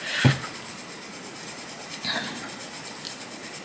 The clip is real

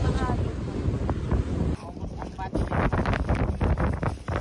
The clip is real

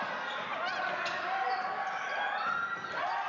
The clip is real